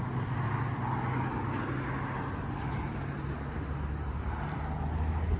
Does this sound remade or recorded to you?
recorded